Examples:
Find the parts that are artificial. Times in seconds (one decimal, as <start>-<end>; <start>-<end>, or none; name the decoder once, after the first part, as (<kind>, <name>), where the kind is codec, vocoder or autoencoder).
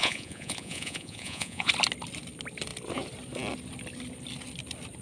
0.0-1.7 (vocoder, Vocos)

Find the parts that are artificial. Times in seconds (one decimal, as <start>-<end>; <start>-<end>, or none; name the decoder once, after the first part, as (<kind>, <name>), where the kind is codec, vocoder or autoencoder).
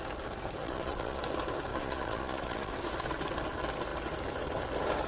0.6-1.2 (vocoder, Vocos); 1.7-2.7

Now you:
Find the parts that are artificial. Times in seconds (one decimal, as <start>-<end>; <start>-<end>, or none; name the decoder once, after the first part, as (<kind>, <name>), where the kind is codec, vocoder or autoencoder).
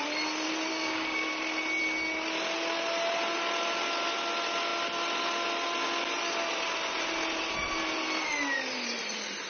0.7-1.3 (codec, DAC)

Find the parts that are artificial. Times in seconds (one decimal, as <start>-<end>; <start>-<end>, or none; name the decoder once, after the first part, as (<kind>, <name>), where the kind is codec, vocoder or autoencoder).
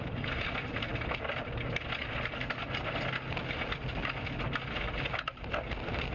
none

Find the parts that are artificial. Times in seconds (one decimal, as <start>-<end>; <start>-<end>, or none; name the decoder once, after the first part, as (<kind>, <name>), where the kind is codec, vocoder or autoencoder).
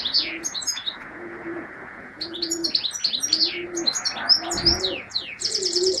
0.0-2.6 (vocoder, Vocos); 4.8-6.0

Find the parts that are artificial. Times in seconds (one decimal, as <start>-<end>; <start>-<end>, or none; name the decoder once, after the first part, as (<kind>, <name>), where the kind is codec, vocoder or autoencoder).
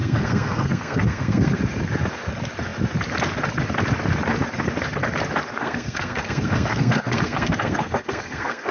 0.0-1.6 (codec, SNAC); 5.6-8.7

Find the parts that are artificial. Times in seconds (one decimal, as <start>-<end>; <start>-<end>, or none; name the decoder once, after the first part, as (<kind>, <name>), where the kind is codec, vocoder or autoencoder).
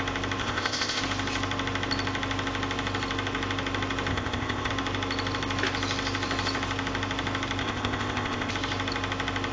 0.4-1.0 (codec, ZipCodec); 4.1-4.7; 7.6-8.5